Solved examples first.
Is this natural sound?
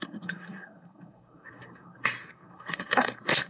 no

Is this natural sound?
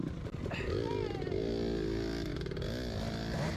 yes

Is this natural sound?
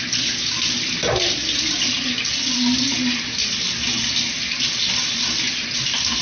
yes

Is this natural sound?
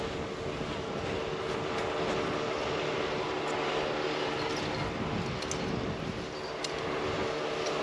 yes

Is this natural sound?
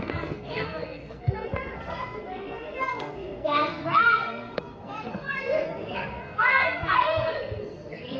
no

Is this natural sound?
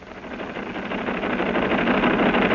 yes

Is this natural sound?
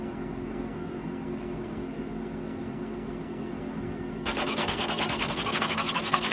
no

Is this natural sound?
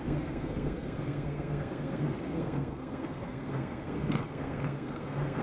no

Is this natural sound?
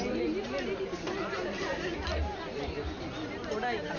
yes